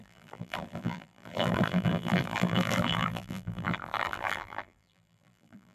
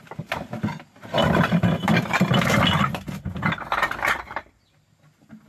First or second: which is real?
second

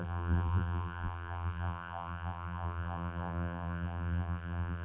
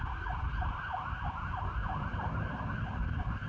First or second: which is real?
second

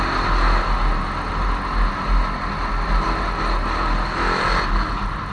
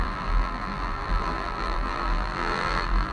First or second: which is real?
first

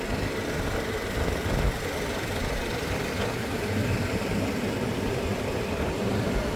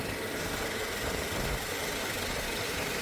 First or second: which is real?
second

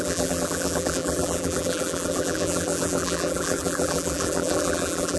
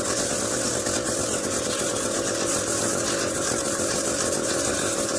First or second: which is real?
second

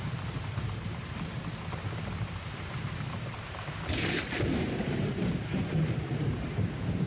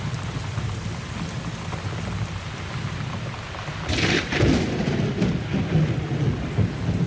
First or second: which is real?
second